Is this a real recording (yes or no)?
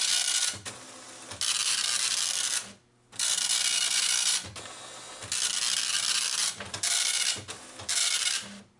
yes